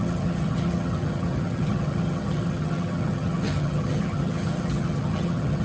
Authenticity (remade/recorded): remade